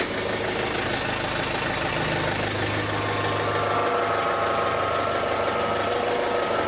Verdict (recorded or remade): recorded